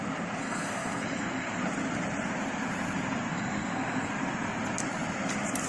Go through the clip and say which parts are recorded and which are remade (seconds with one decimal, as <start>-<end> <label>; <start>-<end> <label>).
0.0-0.4 recorded; 0.4-1.6 remade; 1.6-3.3 recorded; 3.3-4.1 remade; 4.1-5.7 recorded